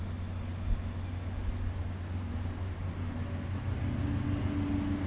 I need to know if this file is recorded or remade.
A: recorded